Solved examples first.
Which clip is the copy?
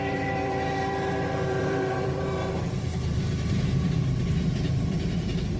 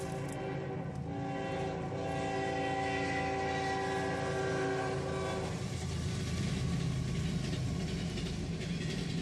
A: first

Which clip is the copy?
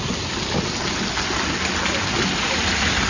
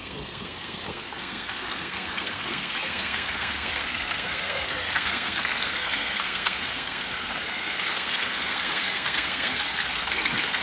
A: second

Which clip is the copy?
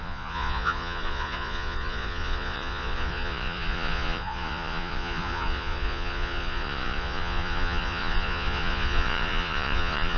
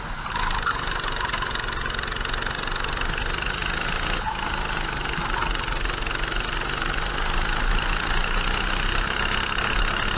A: first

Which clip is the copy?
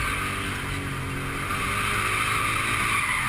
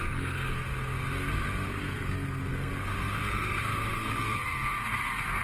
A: second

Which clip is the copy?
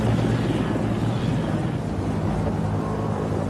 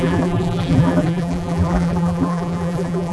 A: second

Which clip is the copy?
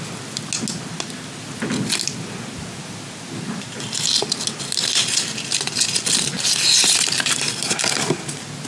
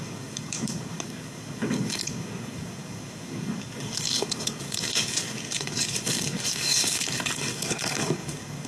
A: second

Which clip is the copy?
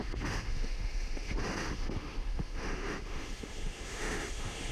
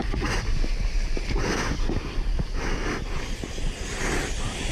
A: first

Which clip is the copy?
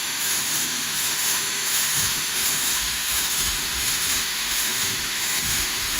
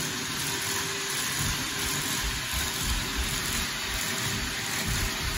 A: first